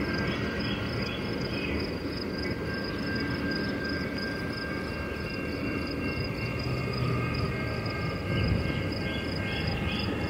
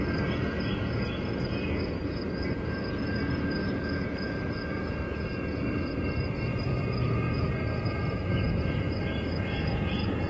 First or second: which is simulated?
second